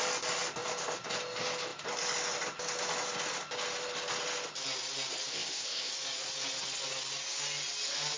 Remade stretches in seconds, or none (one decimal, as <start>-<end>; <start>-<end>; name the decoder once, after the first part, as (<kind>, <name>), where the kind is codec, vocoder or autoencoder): 5.3-5.9 (codec, ZipCodec)